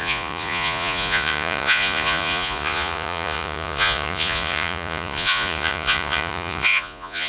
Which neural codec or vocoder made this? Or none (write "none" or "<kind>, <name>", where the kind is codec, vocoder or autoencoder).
vocoder, Vocos